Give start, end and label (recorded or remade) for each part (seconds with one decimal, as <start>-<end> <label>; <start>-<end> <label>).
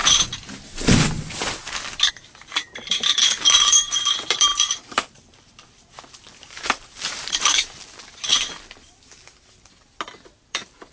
0.0-2.1 recorded; 2.1-8.3 remade; 8.3-10.4 recorded; 10.4-10.9 remade